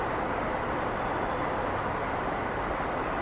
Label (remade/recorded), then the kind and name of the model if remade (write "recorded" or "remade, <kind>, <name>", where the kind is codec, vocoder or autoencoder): recorded